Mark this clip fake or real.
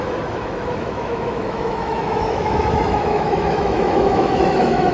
fake